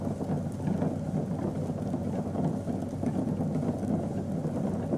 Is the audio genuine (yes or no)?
yes